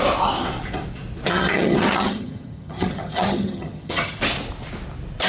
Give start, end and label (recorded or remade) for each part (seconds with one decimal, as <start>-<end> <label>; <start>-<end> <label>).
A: 0.0-1.3 recorded; 1.3-4.2 remade; 4.2-5.3 recorded